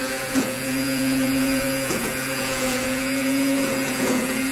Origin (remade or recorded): remade